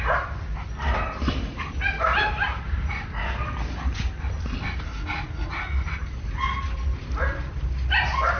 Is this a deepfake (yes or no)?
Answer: no